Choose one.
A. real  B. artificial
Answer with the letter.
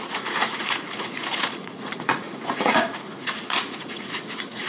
B